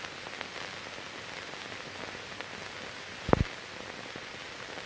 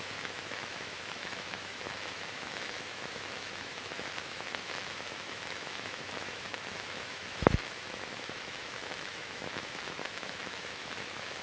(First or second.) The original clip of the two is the first